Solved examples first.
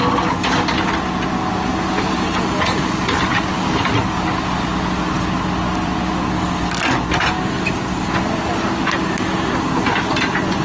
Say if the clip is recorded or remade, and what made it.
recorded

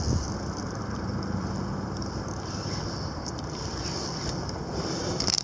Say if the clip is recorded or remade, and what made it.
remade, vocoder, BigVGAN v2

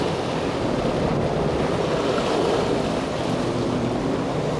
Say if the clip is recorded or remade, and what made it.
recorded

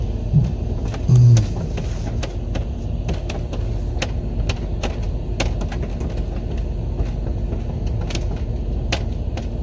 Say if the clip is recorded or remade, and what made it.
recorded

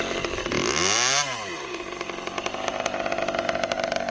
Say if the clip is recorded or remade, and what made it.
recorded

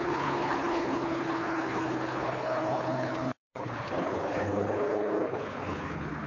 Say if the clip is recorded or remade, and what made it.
remade, codec, HILCodec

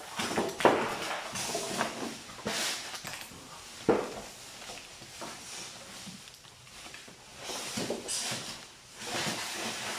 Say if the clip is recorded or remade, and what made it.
recorded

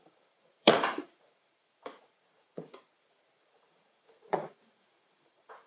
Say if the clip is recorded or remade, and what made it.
remade, vocoder, Vocos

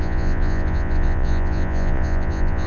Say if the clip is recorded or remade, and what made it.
remade, vocoder, Vocos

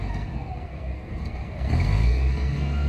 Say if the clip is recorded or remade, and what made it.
remade, codec, SNAC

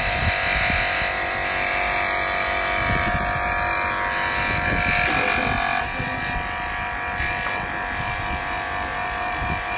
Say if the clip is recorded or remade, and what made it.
recorded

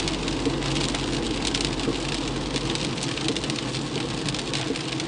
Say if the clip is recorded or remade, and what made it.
recorded